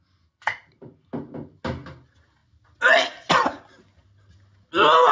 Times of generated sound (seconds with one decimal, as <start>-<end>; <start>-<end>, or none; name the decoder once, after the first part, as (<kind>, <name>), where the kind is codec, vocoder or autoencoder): none